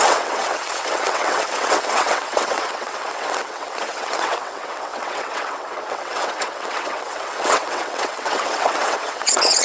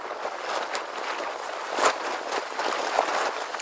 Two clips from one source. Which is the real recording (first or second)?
second